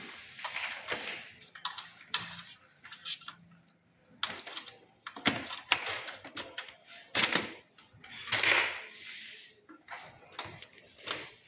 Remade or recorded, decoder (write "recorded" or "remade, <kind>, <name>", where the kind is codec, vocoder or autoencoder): recorded